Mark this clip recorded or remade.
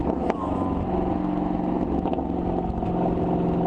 recorded